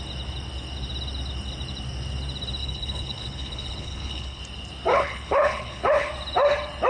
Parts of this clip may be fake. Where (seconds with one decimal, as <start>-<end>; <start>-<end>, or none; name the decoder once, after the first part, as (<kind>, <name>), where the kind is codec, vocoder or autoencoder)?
2.6-4.4 (codec, HILCodec); 4.9-6.1